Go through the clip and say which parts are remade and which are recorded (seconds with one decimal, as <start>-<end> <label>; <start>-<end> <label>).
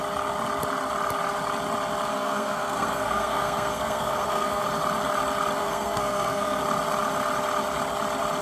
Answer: 0.0-2.1 recorded; 2.1-4.6 remade; 4.6-5.6 recorded; 5.6-6.6 remade; 6.6-8.4 recorded